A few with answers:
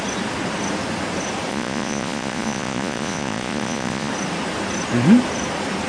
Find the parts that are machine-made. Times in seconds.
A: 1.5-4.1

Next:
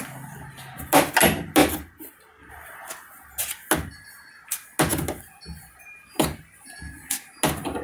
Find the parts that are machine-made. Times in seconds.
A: none

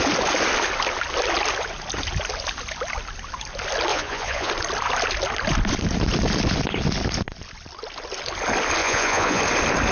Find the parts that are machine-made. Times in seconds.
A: 3.9-4.5; 8.8-9.4